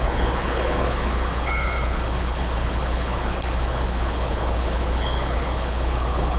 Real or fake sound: fake